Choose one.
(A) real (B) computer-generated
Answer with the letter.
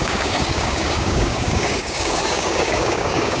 B